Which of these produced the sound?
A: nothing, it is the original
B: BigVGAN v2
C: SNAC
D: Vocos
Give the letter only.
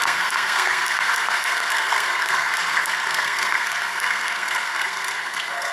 C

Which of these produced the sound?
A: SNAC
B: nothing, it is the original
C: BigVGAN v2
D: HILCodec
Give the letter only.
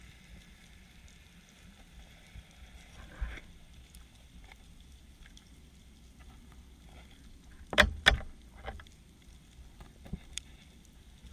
B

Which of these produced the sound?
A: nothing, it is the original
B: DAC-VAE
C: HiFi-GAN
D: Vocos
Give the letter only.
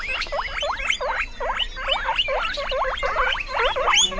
A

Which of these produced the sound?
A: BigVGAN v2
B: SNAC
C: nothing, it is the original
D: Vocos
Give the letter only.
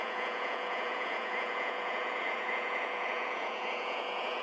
D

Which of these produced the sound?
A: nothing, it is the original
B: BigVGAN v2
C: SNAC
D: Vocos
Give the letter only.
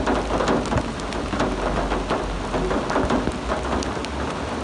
A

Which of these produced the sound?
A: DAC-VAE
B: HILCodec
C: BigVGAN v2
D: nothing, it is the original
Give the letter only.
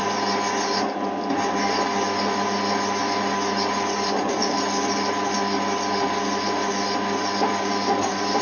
D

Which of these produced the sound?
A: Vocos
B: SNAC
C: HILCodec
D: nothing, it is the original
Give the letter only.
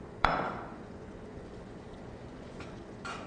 A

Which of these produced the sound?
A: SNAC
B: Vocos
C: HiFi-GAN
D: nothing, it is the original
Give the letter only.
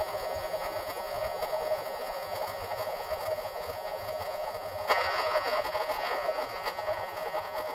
B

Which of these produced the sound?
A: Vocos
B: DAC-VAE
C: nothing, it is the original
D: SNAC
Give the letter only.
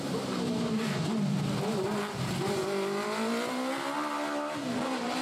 C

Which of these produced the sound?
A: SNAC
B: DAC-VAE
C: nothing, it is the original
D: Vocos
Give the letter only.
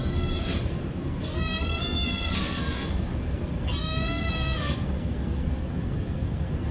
A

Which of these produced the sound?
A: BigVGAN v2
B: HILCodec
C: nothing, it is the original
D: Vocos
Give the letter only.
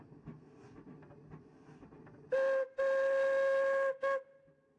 C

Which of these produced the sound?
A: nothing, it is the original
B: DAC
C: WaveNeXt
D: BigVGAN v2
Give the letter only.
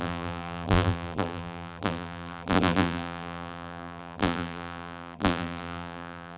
D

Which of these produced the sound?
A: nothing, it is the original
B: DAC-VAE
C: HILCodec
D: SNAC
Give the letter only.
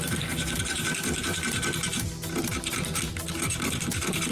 A